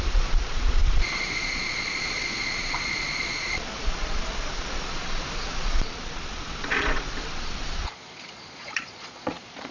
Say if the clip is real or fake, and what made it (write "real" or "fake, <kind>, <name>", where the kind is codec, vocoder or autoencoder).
fake, vocoder, Vocos